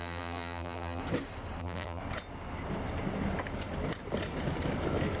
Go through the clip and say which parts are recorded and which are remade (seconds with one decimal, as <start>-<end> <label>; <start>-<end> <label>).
0.0-1.0 remade; 1.0-1.6 recorded; 1.6-2.0 remade; 2.0-5.2 recorded